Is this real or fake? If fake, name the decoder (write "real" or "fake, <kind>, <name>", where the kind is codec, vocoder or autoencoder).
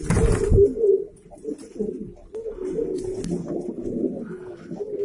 real